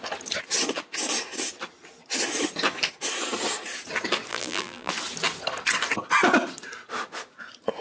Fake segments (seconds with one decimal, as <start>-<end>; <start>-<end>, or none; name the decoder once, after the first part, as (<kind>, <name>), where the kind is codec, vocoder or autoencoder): 4.3-4.9 (vocoder, BigVGAN v2)